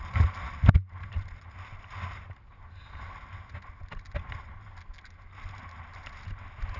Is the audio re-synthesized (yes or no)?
no